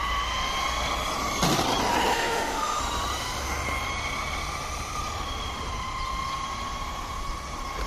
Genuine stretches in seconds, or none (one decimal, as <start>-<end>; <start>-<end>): 0.0-2.1; 2.8-7.9